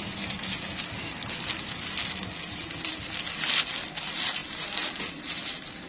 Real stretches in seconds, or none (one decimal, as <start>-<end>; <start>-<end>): 0.0-5.9